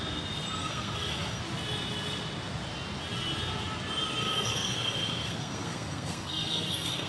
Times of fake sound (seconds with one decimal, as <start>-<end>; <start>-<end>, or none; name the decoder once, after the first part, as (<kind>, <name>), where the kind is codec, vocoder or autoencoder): 0.6-1.4 (codec, SNAC); 4.2-7.1

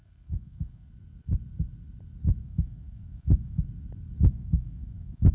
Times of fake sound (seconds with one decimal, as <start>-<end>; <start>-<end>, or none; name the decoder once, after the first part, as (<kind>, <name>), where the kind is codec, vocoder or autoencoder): 0.0-0.9 (codec, SNAC); 2.4-3.6; 4.3-5.3

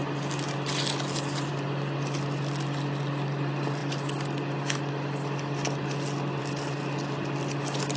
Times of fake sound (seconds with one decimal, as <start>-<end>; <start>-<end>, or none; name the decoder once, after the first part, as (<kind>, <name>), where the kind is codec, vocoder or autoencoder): none

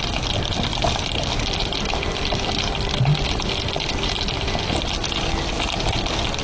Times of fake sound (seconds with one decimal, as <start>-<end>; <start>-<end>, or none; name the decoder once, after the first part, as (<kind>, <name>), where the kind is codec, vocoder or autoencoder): none

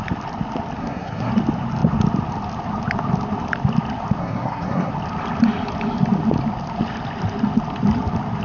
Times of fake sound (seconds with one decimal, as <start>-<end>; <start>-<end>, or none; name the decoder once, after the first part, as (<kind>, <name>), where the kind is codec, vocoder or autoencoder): 0.8-1.3 (codec, SNAC); 4.2-4.9

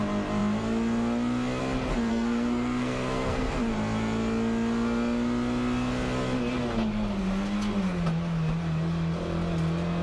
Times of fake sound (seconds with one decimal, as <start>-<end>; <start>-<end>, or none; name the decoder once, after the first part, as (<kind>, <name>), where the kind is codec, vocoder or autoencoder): 2.1-3.6 (codec, SNAC)

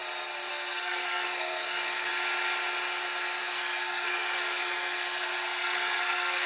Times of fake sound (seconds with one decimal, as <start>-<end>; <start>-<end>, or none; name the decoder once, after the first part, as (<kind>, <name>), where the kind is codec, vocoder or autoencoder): 0.5-2.1 (codec, SNAC); 3.4-6.5